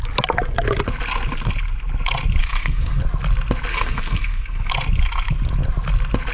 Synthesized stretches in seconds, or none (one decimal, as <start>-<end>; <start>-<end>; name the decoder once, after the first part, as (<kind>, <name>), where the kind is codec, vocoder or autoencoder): 2.4-3.0 (codec, SNAC); 3.7-4.7